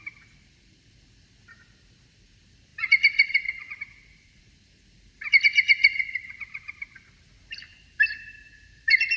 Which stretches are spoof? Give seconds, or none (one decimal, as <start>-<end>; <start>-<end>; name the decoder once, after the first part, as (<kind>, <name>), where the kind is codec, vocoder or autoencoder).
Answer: 2.7-4.4 (vocoder, BigVGAN v2); 5.8-6.7; 7.7-9.2